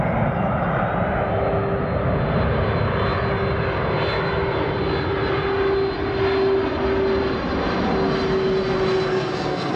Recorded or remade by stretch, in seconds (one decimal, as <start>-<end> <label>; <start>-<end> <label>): 0.0-9.1 recorded; 9.1-9.8 remade